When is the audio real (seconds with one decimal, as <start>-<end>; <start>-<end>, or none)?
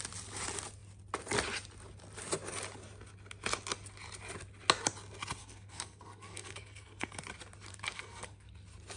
0.0-5.4; 7.2-7.7; 8.5-9.0